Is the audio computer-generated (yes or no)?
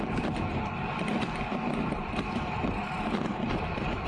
yes